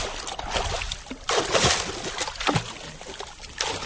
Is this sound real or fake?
real